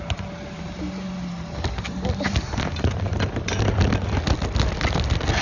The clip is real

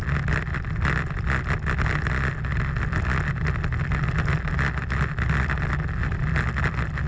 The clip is real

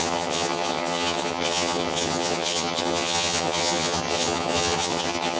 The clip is fake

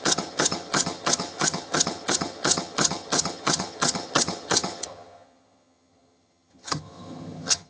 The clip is fake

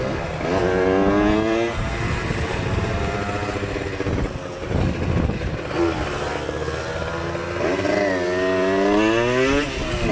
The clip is real